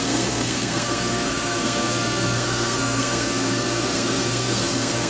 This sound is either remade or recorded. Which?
remade